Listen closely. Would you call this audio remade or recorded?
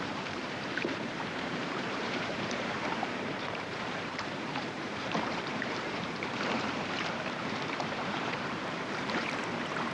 remade